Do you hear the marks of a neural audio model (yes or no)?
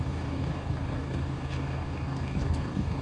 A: yes